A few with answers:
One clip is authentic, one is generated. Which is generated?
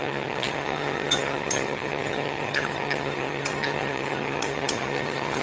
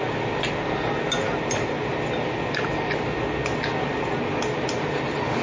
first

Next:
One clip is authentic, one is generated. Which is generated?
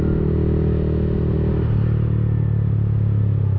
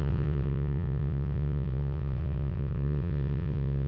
second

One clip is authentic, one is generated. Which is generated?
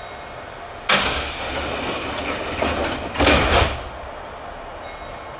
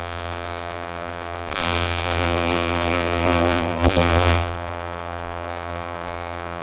second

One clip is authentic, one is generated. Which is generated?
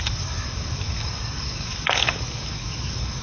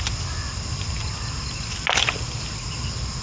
first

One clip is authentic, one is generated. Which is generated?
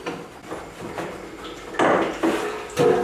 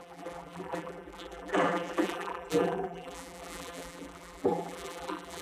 second